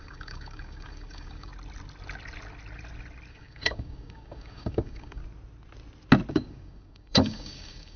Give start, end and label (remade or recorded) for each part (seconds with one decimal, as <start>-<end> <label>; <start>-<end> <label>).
0.0-1.5 remade; 1.5-3.3 recorded; 3.3-5.2 remade; 5.2-6.3 recorded; 6.3-8.0 remade